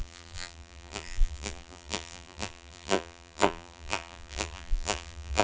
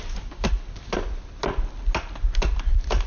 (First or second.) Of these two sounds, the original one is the second